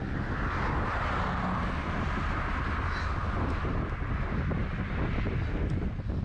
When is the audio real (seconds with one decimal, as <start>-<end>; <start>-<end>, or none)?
0.0-6.2